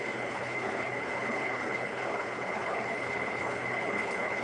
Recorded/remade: remade